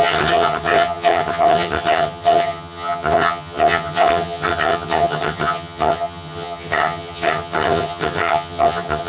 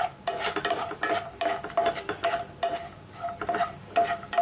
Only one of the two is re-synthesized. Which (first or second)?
first